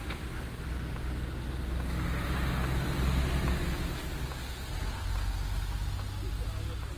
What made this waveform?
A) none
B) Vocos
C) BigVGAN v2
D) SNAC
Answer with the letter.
A